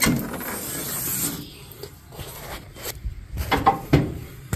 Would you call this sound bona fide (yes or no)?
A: yes